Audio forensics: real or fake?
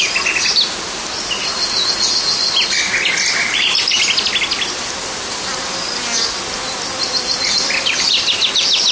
real